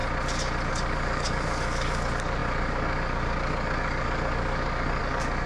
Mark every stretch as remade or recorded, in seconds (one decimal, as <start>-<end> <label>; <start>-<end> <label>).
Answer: 0.0-0.7 recorded; 0.7-5.5 remade

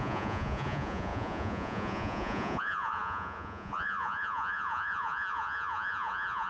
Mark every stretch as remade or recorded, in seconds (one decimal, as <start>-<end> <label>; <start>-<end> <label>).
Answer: 0.0-6.5 remade

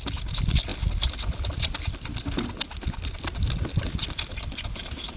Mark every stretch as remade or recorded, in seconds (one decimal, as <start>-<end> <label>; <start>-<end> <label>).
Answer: 0.0-5.2 recorded

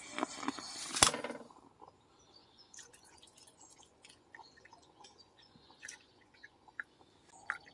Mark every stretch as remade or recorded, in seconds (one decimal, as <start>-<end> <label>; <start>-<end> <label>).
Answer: 0.0-2.4 recorded; 2.4-7.0 remade; 7.0-7.7 recorded

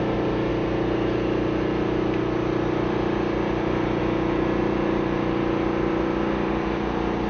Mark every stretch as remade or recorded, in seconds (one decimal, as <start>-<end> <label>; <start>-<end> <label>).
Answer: 0.0-7.3 recorded